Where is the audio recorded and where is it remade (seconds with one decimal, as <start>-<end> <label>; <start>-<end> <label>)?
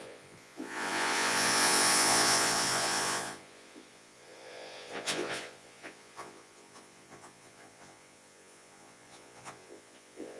0.0-10.4 remade